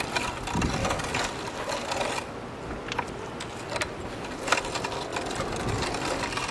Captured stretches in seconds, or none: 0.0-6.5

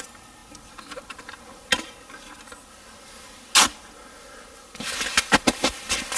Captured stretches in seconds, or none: 0.0-6.2

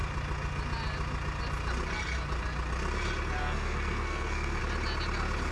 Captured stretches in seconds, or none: 0.0-3.4; 4.6-5.5